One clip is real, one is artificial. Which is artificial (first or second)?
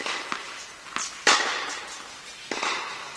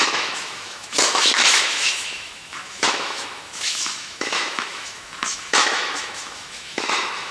second